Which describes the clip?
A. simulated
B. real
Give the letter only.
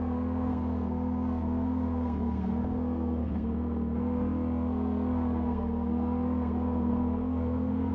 A